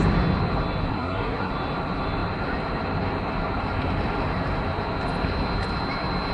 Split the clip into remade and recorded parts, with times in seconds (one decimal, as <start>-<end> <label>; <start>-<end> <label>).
0.0-0.9 recorded; 0.9-1.5 remade; 1.5-6.3 recorded